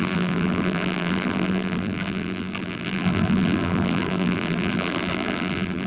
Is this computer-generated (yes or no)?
yes